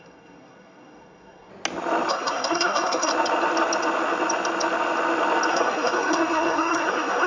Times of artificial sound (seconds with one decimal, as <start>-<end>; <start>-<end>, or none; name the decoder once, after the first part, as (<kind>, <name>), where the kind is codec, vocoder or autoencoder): 0.0-1.5 (codec, SNAC); 2.1-3.1; 5.5-7.3